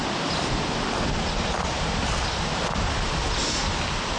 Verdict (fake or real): real